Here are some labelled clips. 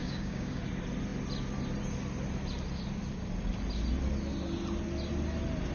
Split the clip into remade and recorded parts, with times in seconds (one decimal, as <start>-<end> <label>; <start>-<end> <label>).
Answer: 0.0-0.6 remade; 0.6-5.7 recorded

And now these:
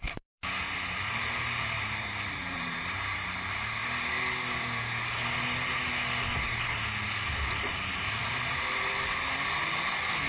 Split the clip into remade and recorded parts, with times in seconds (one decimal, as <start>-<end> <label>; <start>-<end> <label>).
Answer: 0.0-3.8 remade; 3.8-7.9 recorded; 7.9-10.3 remade

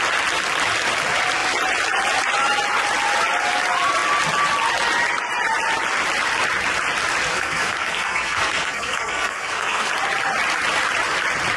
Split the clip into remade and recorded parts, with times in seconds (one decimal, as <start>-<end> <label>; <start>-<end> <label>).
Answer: 0.0-7.3 recorded; 7.3-9.9 remade; 9.9-11.6 recorded

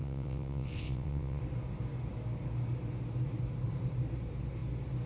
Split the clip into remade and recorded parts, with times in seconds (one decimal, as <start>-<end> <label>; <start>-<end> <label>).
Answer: 0.0-1.4 remade; 1.4-5.1 recorded